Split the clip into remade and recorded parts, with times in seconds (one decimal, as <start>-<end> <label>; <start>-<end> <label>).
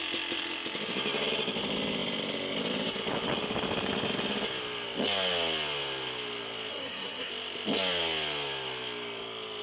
0.0-6.7 recorded; 6.7-7.3 remade; 7.3-9.6 recorded